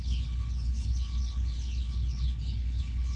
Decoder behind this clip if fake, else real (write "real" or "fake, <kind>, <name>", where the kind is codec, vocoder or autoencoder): fake, codec, HILCodec